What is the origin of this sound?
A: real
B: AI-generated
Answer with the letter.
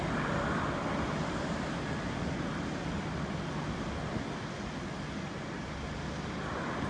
A